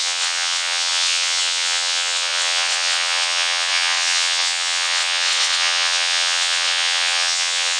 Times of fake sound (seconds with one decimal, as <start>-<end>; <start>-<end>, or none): 0.0-7.8